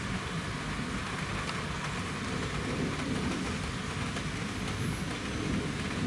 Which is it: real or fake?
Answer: real